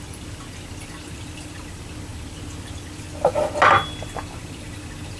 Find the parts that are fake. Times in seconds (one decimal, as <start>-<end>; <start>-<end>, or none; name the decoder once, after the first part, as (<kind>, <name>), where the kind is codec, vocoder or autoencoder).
none